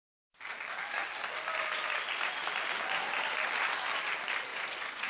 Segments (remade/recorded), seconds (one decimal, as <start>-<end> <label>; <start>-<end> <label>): 0.0-4.5 recorded; 4.5-5.1 remade